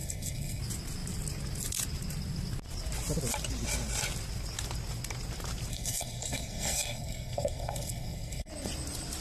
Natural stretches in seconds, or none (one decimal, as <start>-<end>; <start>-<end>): 0.6-5.7; 8.5-9.2